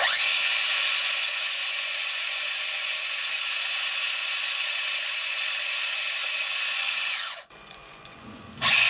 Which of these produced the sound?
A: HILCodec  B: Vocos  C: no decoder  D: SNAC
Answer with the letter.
B